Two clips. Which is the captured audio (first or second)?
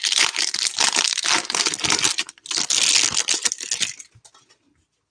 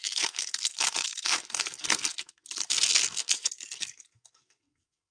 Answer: first